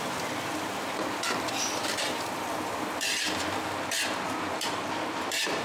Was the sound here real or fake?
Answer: fake